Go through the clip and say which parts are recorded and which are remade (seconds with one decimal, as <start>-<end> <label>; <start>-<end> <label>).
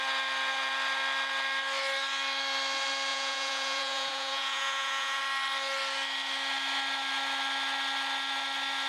0.0-3.1 recorded; 3.1-5.2 remade; 5.2-8.9 recorded